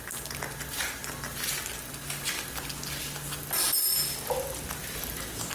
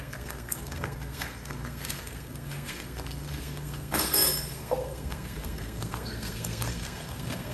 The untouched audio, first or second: first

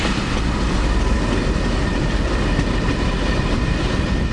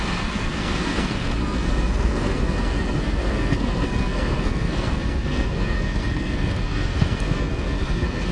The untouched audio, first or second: first